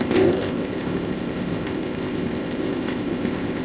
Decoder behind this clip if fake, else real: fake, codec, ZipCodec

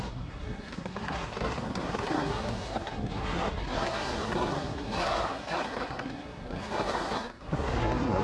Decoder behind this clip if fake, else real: fake, codec, SNAC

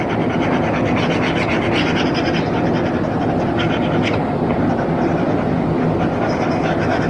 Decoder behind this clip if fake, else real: real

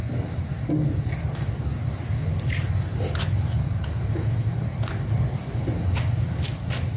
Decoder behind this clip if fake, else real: real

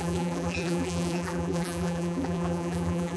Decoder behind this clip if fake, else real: fake, vocoder, BigVGAN v2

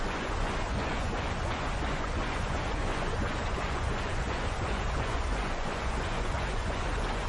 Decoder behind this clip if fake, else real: fake, vocoder, Vocos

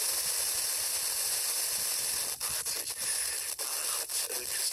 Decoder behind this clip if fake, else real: real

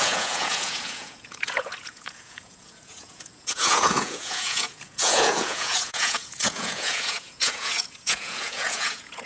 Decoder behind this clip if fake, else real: fake, vocoder, Vocos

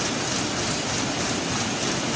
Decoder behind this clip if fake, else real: real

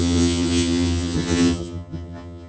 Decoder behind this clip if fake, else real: fake, vocoder, HiFi-GAN